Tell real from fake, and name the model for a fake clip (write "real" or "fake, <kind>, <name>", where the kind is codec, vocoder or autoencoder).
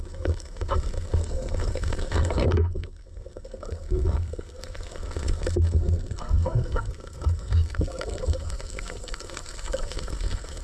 fake, codec, SNAC